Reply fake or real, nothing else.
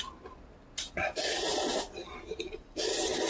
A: real